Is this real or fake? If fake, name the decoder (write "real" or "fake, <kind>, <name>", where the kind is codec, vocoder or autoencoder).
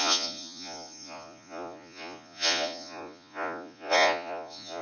fake, vocoder, Vocos